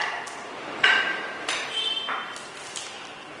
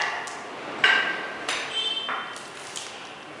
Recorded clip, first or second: second